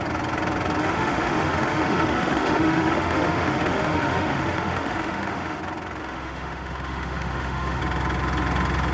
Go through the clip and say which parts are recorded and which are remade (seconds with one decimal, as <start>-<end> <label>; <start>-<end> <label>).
0.0-0.8 recorded; 0.8-5.6 remade; 5.6-6.0 recorded; 6.0-7.8 remade; 7.8-8.9 recorded